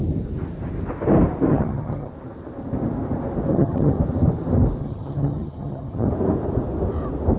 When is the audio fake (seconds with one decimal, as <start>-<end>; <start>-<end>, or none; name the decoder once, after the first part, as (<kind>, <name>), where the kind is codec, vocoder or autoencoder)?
1.5-2.1 (vocoder, HiFi-GAN); 3.5-4.0; 4.8-6.1